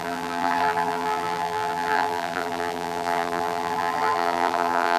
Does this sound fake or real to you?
fake